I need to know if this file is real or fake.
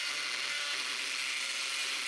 real